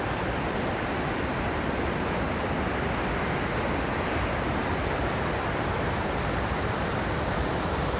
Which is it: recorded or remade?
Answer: recorded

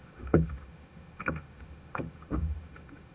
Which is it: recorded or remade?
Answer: remade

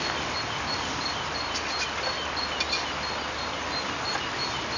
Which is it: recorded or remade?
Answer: recorded